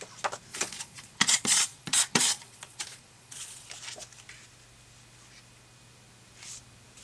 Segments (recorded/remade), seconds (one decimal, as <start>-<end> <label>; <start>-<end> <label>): 0.0-0.5 recorded; 0.5-3.7 remade; 3.7-7.0 recorded